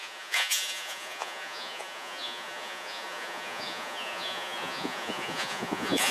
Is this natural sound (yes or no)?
no